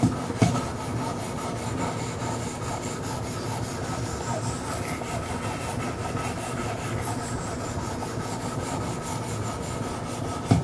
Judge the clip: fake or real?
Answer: real